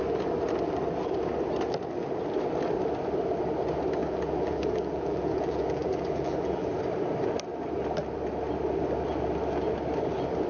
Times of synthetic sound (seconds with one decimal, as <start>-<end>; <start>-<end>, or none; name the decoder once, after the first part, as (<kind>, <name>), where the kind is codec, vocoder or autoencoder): 4.0-6.8 (vocoder, BigVGAN v2)